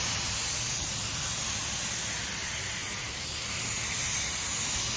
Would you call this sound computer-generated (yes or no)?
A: no